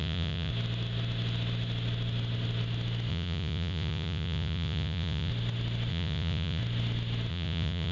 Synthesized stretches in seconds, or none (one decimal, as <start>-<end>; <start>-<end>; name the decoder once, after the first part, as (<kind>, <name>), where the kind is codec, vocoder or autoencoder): 0.0-0.5 (vocoder, Vocos); 3.1-5.3; 5.9-6.6; 7.3-7.9